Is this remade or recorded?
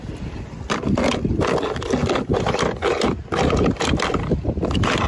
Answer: recorded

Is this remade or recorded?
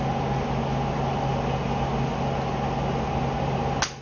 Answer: recorded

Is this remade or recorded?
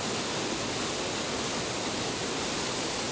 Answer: recorded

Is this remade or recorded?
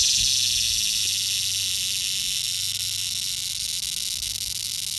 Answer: recorded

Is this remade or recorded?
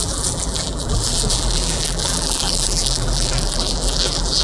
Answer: remade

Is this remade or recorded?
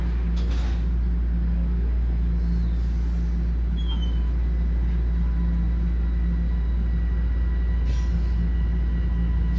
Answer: recorded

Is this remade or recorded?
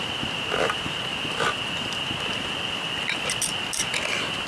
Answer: recorded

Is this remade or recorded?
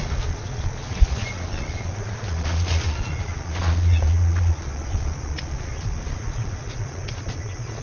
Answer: remade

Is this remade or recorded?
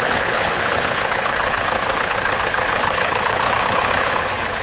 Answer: remade